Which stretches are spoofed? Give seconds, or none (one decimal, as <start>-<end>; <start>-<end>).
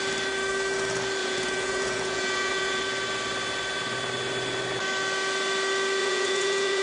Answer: 1.2-2.8; 6.0-6.8